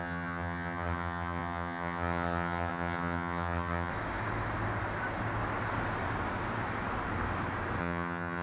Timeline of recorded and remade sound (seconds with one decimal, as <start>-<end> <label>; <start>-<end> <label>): 0.0-3.9 remade; 3.9-7.8 recorded; 7.8-8.4 remade